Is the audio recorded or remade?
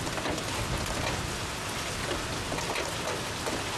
recorded